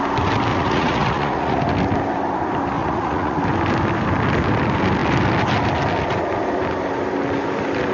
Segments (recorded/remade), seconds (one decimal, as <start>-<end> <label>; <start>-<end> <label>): 0.0-0.5 recorded; 0.5-1.6 remade; 1.6-2.8 recorded; 2.8-3.4 remade; 3.4-7.9 recorded